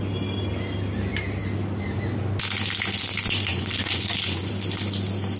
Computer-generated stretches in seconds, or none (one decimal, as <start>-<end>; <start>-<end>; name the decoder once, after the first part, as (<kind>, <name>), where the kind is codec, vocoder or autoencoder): 3.5-4.5 (vocoder, Vocos)